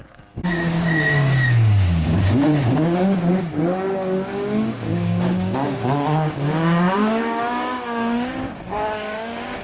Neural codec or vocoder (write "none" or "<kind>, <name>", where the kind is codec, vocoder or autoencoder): codec, DAC